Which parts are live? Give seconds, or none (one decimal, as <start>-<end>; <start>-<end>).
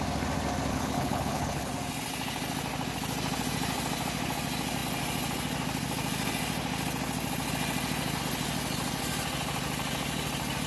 0.0-0.7; 1.7-10.7